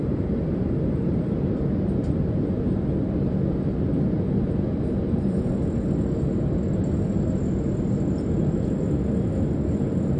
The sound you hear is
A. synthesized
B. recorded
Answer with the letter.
B